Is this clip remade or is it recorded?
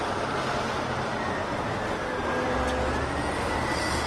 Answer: recorded